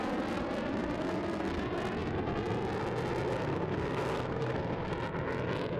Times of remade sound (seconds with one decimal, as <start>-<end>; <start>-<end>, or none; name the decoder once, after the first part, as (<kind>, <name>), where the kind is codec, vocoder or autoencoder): 1.0-1.6 (codec, SNAC); 3.3-4.9